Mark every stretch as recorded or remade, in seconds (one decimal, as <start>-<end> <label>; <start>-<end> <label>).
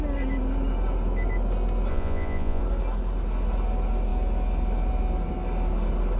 0.0-1.9 recorded; 1.9-2.6 remade; 2.6-6.2 recorded